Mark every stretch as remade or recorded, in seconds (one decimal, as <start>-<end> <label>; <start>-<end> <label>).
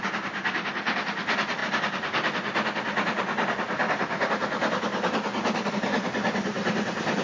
0.0-7.2 recorded